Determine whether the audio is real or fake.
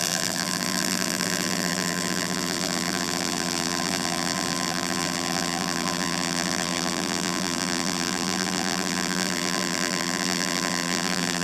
fake